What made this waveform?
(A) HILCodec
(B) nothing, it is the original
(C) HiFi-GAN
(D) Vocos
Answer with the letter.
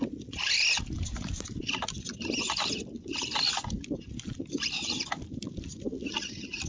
B